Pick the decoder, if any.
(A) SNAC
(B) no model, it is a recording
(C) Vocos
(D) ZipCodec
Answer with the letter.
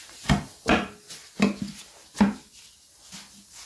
B